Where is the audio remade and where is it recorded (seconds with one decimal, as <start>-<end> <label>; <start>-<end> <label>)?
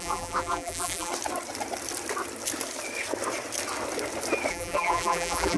0.0-1.1 remade; 1.1-4.5 recorded; 4.5-5.6 remade